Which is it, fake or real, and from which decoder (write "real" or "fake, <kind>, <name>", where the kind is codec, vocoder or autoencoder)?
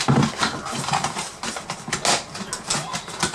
real